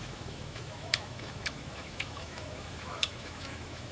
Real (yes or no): no